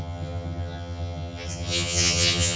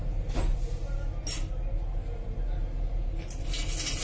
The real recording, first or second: second